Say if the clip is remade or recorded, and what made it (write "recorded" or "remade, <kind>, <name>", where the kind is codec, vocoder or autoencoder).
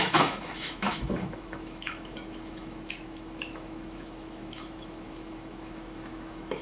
remade, autoencoder, DAC-VAE